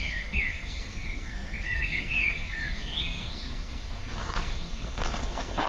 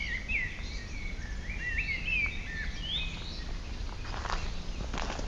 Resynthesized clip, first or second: first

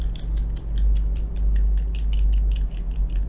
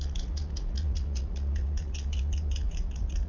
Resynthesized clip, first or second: second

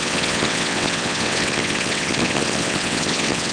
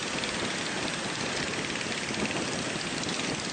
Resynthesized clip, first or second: first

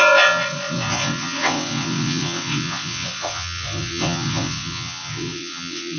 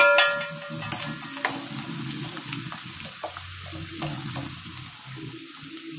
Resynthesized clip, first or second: first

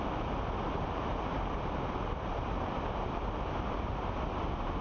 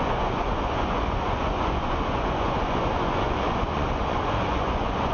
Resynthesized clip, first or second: second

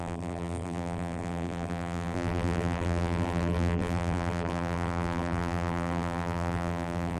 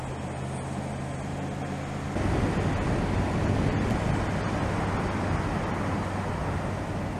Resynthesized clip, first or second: first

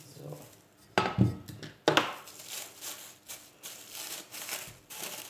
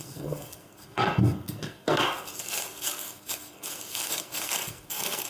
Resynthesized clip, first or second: second